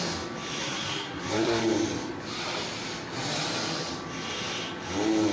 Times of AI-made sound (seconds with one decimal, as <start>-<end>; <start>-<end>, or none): 0.6-1.6